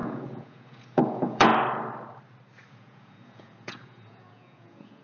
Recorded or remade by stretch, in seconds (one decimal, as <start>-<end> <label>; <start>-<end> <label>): 0.0-1.5 remade; 1.5-2.7 recorded; 2.7-5.0 remade